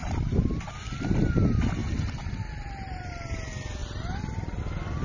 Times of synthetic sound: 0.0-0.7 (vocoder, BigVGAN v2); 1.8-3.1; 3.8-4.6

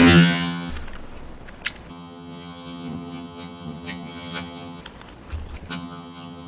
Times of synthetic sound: 0.0-0.7 (vocoder, HiFi-GAN); 1.9-4.8; 5.7-6.5

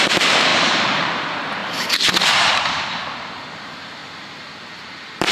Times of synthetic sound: 0.0-1.6 (vocoder, BigVGAN v2); 2.3-4.0; 4.7-5.3

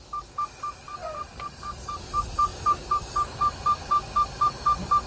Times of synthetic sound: 1.0-1.5 (vocoder, BigVGAN v2); 2.5-5.1

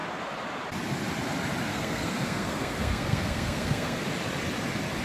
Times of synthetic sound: 1.7-4.0 (codec, SNAC)